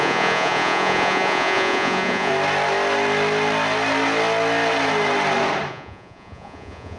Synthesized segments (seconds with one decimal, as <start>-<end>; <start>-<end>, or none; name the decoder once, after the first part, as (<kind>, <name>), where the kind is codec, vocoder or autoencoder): 0.0-2.3 (vocoder, Vocos); 5.7-7.0